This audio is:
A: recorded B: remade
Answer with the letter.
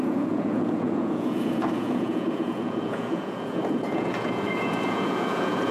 B